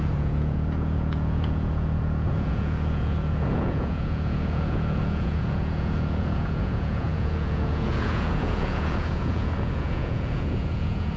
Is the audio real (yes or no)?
no